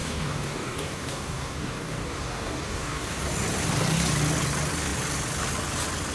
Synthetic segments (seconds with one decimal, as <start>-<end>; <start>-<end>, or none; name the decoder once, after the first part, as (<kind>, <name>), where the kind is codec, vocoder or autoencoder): 0.0-3.2 (codec, DAC)